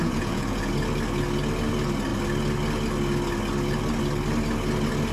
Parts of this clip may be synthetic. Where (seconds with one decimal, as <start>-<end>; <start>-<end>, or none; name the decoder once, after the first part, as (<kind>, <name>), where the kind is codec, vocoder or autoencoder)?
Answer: 0.0-0.7 (vocoder, Vocos)